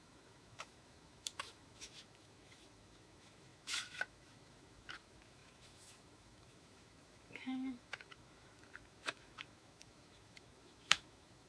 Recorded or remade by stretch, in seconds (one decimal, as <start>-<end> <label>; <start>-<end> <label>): 0.0-11.5 remade

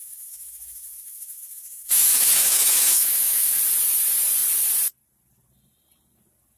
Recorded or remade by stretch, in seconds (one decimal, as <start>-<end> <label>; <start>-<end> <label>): 0.0-3.6 remade; 3.6-6.6 recorded

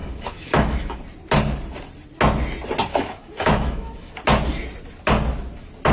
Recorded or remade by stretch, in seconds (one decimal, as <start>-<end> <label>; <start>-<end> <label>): 0.0-1.0 remade; 1.0-2.9 recorded; 2.9-4.1 remade; 4.1-5.9 recorded

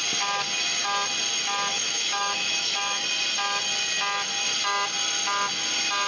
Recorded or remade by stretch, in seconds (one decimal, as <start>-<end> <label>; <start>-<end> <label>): 0.0-1.7 recorded; 1.7-3.0 remade; 3.0-6.1 recorded

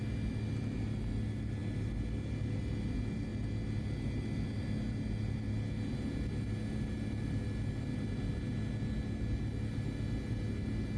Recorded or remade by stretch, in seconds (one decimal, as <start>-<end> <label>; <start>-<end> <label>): 0.0-11.0 recorded

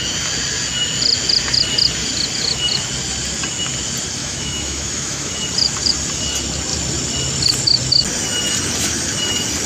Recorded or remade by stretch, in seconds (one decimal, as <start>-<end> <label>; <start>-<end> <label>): 0.0-4.2 recorded; 4.2-5.3 remade; 5.3-9.7 recorded